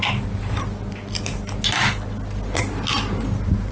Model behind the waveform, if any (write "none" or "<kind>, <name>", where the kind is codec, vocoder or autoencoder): none